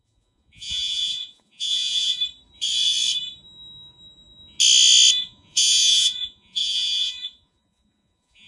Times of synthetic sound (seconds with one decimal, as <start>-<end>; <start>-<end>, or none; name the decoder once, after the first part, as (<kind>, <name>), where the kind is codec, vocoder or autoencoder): 0.0-2.2 (vocoder, Vocos); 5.2-8.5